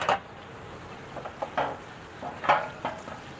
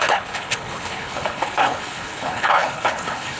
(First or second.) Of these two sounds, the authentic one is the first